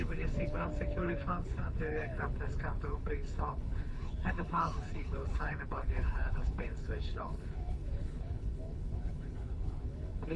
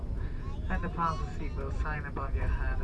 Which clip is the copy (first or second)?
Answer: first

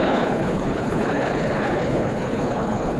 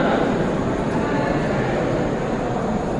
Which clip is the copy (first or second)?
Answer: first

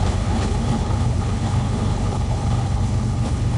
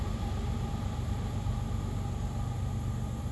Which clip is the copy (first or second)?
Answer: first